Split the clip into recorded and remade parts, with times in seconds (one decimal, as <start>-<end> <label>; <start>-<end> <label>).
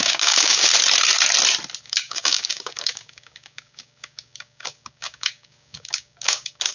0.0-0.7 remade; 0.7-1.8 recorded; 1.8-6.7 remade